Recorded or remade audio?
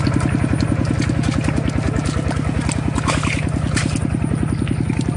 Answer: recorded